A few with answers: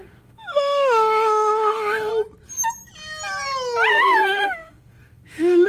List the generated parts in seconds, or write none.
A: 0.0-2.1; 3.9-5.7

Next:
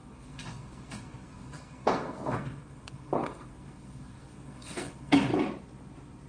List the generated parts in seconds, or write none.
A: 0.0-5.3

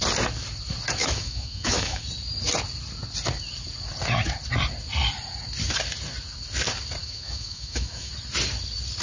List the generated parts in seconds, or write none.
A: 1.0-2.0; 7.0-8.1

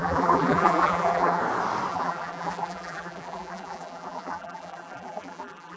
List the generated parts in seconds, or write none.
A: 0.0-1.4; 1.9-5.8

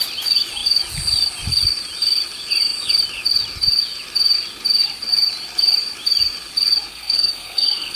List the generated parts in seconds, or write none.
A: 6.9-8.0

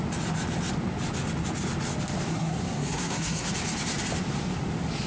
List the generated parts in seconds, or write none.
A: 2.3-3.5

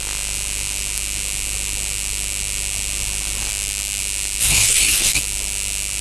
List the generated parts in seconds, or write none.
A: 4.4-5.2

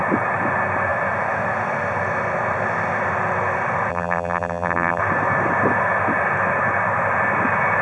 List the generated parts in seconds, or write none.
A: 3.9-5.0